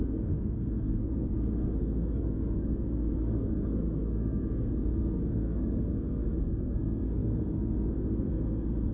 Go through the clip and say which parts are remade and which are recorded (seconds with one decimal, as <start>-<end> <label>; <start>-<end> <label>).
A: 0.0-8.9 remade